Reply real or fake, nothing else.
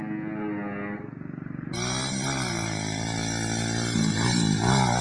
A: real